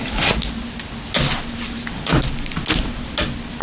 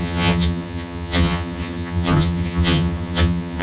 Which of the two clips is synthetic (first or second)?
second